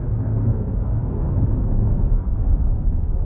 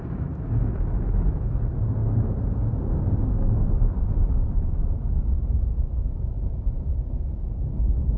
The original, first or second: second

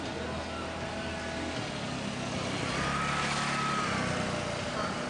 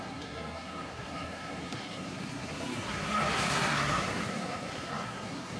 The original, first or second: first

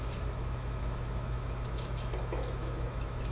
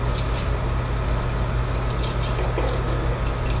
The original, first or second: second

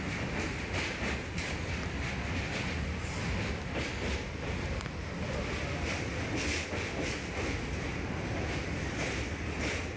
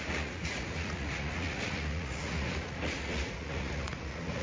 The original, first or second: first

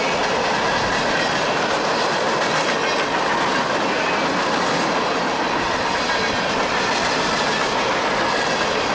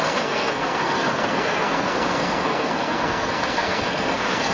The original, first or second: first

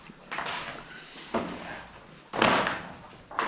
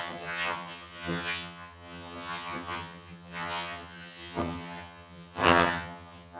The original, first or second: first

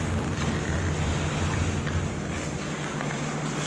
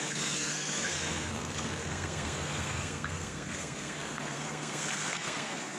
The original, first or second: first